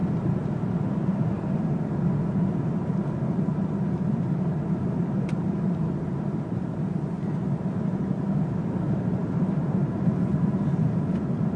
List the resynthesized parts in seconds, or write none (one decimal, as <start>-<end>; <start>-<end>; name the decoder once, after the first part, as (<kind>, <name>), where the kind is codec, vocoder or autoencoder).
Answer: 3.9-11.6 (vocoder, BigVGAN v2)